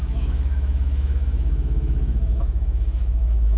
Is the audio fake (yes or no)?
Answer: yes